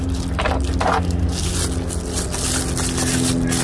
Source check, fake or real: real